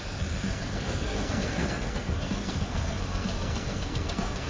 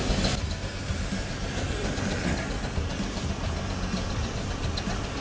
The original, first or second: second